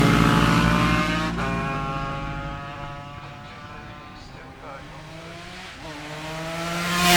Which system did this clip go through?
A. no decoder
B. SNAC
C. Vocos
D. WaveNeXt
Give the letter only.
A